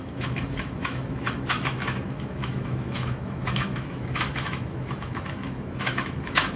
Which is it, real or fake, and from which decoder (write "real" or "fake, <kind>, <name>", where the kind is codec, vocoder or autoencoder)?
fake, autoencoder, DAC-VAE